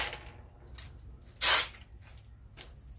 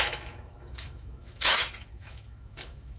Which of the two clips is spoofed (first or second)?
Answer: second